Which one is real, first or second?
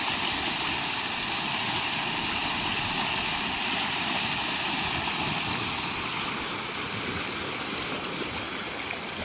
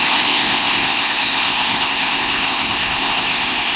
first